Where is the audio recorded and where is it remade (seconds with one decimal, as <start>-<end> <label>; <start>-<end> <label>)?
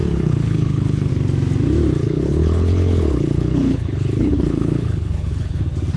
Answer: 0.0-1.1 remade; 1.1-2.0 recorded; 2.0-5.6 remade; 5.6-6.0 recorded